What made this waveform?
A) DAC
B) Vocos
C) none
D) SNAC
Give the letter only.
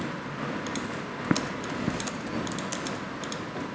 C